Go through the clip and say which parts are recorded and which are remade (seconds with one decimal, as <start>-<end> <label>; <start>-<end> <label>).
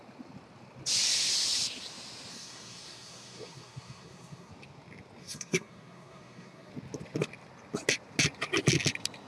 0.0-2.3 recorded; 2.3-4.5 remade; 4.5-5.2 recorded; 5.2-6.7 remade; 6.7-9.3 recorded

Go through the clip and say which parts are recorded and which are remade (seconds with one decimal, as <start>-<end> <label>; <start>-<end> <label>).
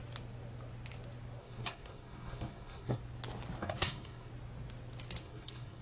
0.0-1.4 recorded; 1.4-3.0 remade; 3.0-3.6 recorded; 3.6-4.3 remade; 4.3-5.2 recorded; 5.2-5.8 remade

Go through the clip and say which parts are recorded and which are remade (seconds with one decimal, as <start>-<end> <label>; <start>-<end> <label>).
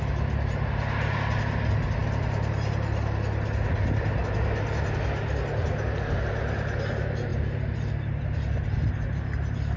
0.0-9.8 recorded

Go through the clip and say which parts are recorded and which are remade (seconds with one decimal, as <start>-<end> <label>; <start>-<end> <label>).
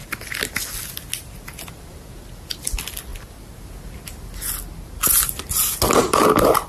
0.0-6.7 recorded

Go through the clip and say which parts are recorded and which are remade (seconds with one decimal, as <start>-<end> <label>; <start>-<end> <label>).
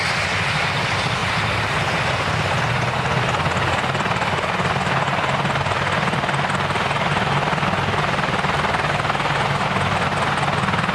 0.0-10.9 recorded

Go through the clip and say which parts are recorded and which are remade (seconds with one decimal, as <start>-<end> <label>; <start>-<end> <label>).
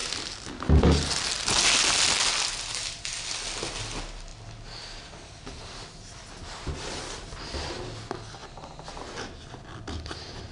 0.0-10.5 recorded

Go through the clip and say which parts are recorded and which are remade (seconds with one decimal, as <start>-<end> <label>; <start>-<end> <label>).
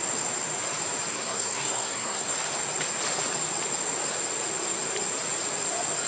0.0-1.1 recorded; 1.1-2.3 remade; 2.3-6.1 recorded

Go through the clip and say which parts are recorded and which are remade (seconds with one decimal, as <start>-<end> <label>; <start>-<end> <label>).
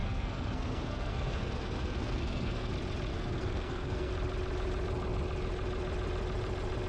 0.0-2.7 remade; 2.7-3.1 recorded; 3.1-4.1 remade; 4.1-6.9 recorded